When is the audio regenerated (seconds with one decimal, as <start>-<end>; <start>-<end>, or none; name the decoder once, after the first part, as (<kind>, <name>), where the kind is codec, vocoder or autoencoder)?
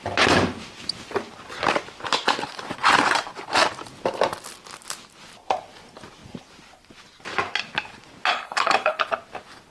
8.3-9.0 (codec, HILCodec)